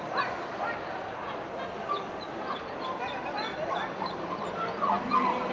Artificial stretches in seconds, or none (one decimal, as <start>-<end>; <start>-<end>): none